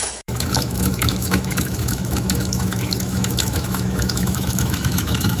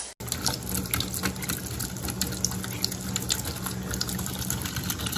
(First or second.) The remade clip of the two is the first